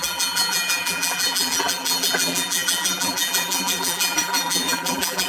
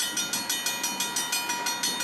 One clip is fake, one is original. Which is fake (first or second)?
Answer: first